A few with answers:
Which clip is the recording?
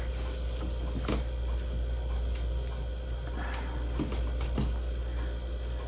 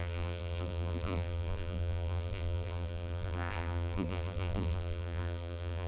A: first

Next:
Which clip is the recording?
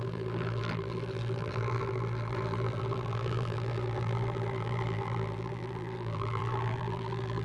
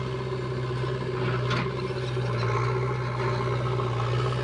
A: second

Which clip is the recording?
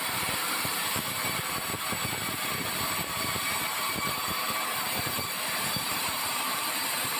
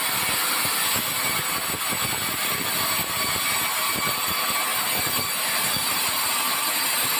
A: second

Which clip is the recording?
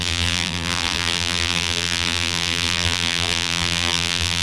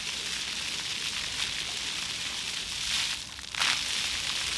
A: second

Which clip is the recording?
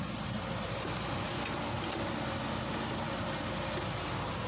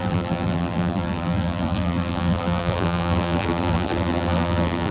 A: first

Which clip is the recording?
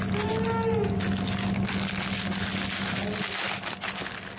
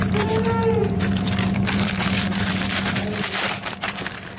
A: first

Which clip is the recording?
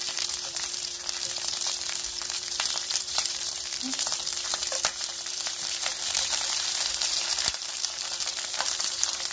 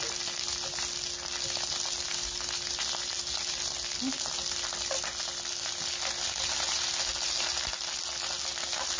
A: second